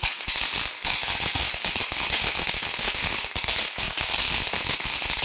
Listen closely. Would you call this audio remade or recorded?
remade